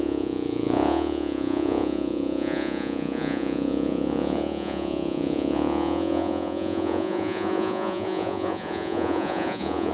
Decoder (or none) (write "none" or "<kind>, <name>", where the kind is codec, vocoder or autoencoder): vocoder, Vocos